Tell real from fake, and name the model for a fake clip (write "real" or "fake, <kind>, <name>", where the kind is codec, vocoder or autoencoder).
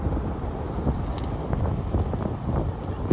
real